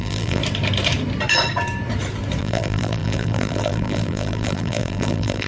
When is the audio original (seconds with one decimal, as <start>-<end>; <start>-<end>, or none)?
0.4-2.4